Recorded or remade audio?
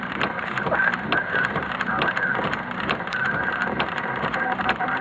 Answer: remade